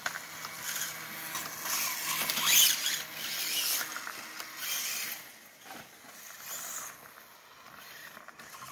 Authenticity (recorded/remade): recorded